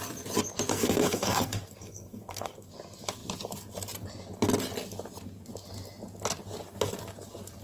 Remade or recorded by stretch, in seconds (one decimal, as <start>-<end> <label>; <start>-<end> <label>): 0.0-0.7 recorded; 0.7-2.7 remade; 2.7-7.6 recorded